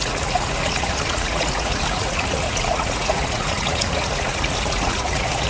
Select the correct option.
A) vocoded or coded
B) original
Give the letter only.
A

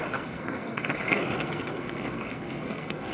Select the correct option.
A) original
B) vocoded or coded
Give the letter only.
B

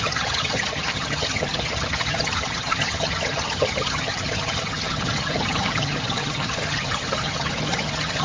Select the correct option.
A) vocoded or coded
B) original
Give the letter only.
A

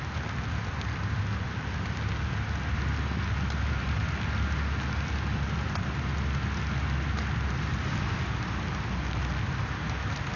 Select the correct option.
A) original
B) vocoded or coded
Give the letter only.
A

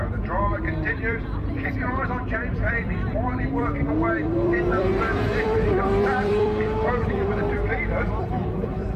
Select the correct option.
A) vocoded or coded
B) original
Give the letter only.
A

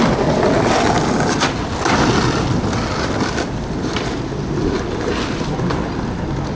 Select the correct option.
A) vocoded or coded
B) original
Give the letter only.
B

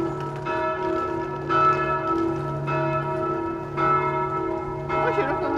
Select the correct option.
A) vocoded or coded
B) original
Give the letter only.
B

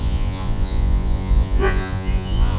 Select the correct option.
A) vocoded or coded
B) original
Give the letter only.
A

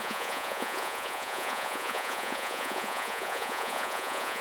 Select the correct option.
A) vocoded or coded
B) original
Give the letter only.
A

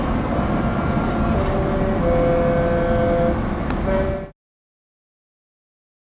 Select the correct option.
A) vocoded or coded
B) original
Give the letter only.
B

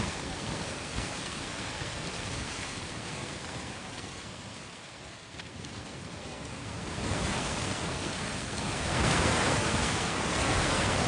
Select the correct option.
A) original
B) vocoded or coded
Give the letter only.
B